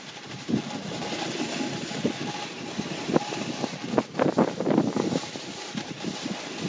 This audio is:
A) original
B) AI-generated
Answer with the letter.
A